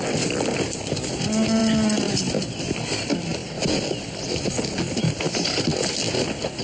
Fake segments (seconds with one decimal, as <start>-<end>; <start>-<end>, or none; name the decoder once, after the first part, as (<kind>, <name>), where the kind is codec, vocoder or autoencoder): none